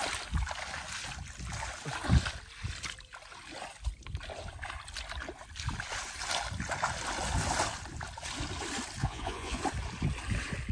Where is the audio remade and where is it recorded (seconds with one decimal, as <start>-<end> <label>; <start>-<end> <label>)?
0.0-9.0 recorded; 9.0-9.6 remade; 9.6-10.7 recorded